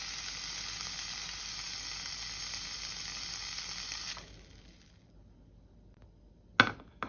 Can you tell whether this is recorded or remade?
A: recorded